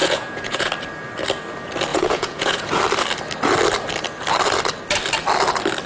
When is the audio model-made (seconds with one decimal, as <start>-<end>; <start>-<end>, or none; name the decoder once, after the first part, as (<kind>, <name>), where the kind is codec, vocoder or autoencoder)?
0.0-0.7 (vocoder, Vocos); 1.9-2.8